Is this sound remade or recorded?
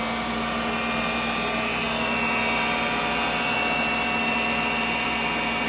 recorded